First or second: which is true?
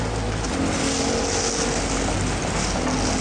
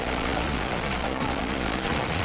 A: first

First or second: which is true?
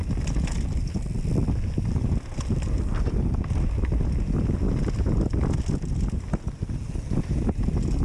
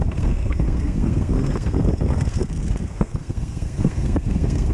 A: first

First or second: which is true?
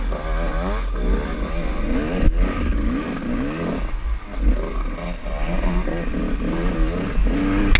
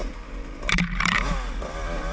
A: first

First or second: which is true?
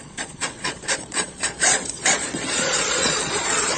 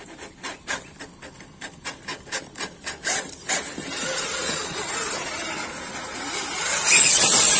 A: second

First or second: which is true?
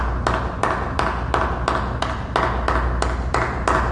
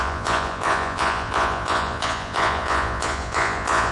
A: first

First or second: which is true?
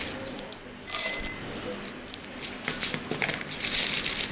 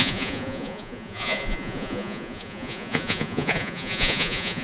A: first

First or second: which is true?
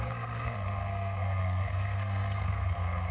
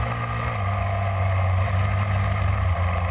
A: second